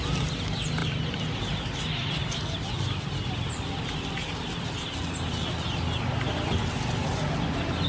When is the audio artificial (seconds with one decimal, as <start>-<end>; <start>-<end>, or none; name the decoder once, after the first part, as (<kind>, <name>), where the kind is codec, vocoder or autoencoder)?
none

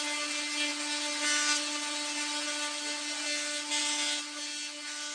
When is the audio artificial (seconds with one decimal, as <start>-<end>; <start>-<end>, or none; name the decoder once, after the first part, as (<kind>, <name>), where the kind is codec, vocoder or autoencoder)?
none